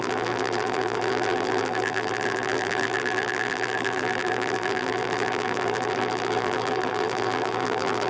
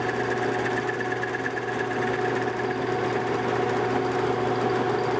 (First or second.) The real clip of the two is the second